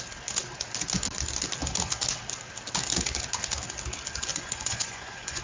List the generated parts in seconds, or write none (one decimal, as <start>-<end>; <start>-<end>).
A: 4.3-5.4